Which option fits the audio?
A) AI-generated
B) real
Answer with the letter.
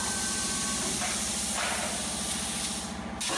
B